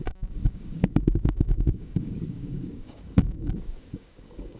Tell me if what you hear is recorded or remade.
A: remade